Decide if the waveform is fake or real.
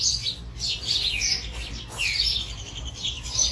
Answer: real